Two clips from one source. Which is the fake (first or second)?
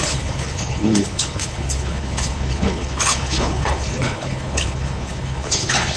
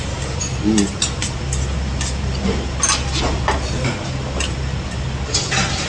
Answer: first